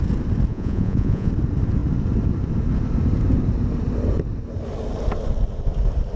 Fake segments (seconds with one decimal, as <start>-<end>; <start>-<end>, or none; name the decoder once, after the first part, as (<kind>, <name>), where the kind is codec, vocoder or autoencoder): 0.5-1.3 (vocoder, Vocos)

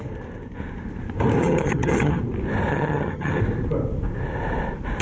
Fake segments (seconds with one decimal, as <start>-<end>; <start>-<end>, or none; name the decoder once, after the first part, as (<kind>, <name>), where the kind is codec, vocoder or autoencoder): 1.4-2.2 (vocoder, HiFi-GAN); 2.7-3.4

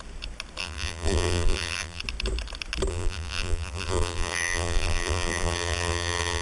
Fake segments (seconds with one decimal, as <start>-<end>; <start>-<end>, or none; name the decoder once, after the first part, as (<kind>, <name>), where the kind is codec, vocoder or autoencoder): 0.6-2.0 (vocoder, BigVGAN v2); 2.9-6.4

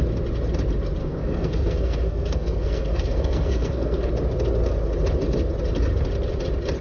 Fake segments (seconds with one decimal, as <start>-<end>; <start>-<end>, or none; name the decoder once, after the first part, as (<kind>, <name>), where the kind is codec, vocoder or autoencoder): 1.0-4.1 (codec, SNAC)

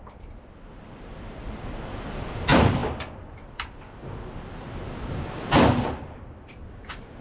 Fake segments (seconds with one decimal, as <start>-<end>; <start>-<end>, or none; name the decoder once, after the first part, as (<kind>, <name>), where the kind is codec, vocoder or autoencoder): 0.0-2.8 (vocoder, BigVGAN v2)

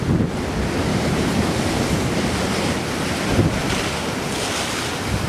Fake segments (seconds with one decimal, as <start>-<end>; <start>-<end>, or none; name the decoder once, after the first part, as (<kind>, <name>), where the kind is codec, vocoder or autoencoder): 0.9-1.7 (vocoder, BigVGAN v2); 3.6-4.4

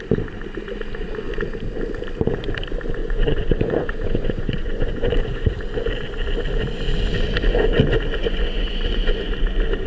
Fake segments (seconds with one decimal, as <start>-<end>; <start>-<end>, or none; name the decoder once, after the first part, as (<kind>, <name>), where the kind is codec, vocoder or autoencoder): 3.0-5.5 (vocoder, Vocos); 8.2-9.3